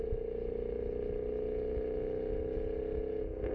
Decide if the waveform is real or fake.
real